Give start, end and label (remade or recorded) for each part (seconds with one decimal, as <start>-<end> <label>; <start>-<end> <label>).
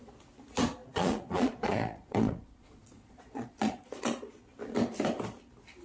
0.0-0.8 recorded; 0.8-4.3 remade; 4.3-5.8 recorded